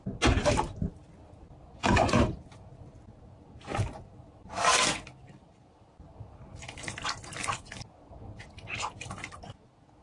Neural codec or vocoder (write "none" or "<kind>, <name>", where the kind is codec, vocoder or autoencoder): none